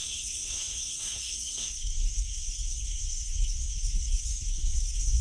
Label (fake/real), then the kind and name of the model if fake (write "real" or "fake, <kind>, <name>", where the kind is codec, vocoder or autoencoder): fake, codec, SNAC